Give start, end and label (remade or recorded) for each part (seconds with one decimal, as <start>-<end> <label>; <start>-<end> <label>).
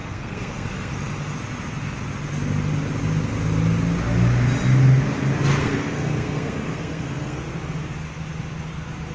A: 0.0-0.9 remade; 0.9-5.6 recorded; 5.6-7.4 remade; 7.4-9.1 recorded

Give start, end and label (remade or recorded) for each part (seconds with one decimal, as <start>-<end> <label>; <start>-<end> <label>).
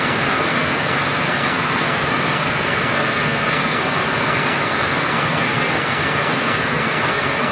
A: 0.0-7.5 remade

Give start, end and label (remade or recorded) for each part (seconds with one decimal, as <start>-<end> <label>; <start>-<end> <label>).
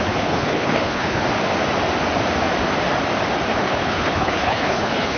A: 0.0-1.2 remade; 1.2-3.5 recorded; 3.5-5.2 remade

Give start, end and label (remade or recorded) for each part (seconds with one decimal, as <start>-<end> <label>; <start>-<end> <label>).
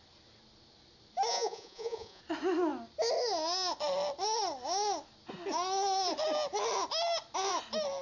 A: 0.0-1.3 recorded; 1.3-2.2 remade; 2.2-8.0 recorded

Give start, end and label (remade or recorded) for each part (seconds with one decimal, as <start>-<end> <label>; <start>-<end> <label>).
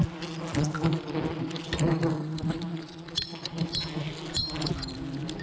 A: 0.0-2.7 recorded; 2.7-3.6 remade; 3.6-5.4 recorded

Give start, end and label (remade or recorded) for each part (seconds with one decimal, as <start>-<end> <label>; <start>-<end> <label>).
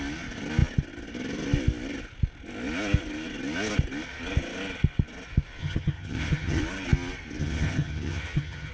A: 0.0-5.6 recorded; 5.6-6.6 remade; 6.6-7.4 recorded; 7.4-8.7 remade